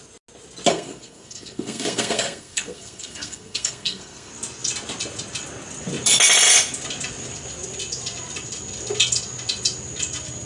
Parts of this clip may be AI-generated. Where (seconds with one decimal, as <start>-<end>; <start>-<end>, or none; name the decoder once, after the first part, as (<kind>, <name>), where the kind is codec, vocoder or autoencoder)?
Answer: 0.7-4.3 (codec, SNAC)